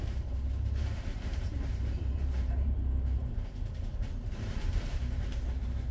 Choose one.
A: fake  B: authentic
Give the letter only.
A